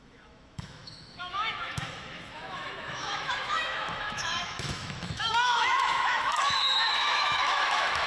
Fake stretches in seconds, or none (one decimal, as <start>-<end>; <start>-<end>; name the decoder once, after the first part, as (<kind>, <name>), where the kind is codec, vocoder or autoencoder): 0.0-8.1 (autoencoder, DAC-VAE)